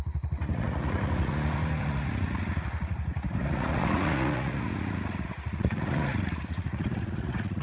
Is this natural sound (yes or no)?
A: no